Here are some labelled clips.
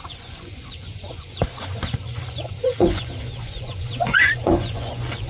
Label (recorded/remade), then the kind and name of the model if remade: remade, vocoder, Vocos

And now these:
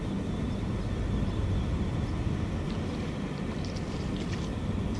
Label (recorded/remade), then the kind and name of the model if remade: recorded